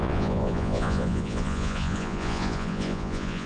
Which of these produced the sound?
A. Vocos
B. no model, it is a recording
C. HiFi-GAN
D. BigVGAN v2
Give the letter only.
A